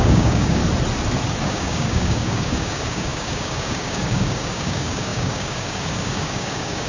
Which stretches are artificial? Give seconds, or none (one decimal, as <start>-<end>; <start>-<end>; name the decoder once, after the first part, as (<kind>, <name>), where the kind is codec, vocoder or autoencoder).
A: 0.0-0.6 (codec, DAC); 1.4-6.9

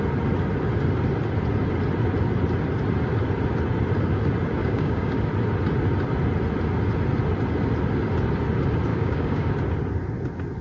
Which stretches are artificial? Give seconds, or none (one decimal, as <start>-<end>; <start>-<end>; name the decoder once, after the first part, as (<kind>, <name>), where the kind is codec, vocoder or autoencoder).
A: 4.6-5.2 (codec, DAC); 8.9-9.5

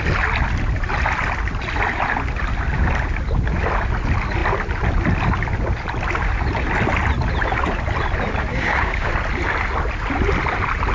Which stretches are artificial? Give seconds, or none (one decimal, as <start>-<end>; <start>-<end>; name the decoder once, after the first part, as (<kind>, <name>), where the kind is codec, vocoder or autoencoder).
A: 8.5-9.1 (codec, DAC)

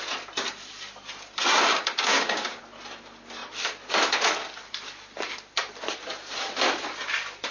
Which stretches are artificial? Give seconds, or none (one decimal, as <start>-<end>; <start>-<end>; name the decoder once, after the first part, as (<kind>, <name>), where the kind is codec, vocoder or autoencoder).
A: 1.7-2.6 (codec, DAC)

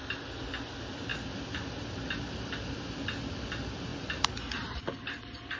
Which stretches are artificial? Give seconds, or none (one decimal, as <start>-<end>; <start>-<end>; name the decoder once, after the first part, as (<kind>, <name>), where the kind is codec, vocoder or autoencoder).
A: none

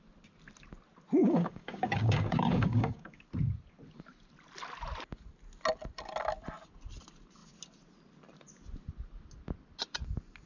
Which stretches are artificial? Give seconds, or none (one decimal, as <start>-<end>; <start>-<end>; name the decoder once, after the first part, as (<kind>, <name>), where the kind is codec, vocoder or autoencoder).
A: 1.2-3.2 (codec, DAC)

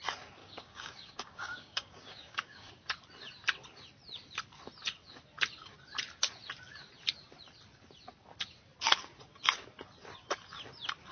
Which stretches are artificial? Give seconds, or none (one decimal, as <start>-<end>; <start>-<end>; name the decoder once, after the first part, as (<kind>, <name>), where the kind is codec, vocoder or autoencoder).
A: 0.4-2.7 (codec, DAC)